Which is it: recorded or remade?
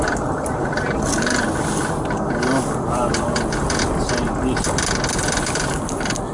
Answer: recorded